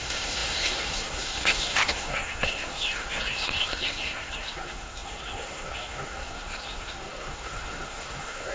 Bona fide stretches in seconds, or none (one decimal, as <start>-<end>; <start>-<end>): none